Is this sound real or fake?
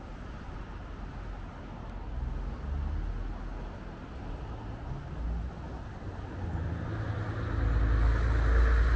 real